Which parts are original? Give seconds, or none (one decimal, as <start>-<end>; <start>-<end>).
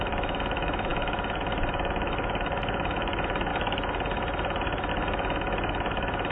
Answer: 3.5-4.9